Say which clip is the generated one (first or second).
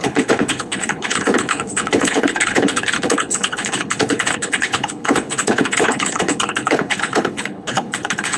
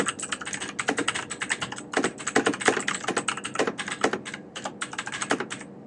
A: first